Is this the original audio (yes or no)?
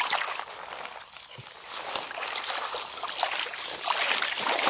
yes